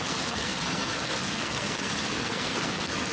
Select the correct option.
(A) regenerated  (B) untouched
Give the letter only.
A